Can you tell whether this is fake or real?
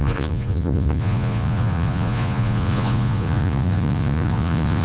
fake